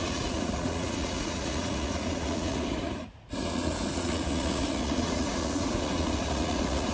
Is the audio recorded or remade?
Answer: remade